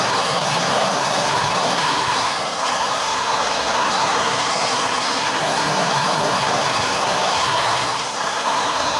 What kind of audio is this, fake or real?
fake